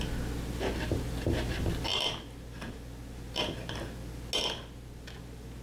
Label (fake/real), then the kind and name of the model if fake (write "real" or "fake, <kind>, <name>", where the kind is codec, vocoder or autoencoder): real